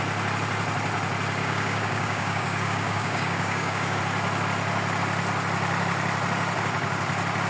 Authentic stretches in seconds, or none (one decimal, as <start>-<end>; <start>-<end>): 0.0-1.4; 4.0-7.5